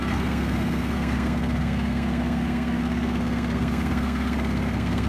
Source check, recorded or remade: remade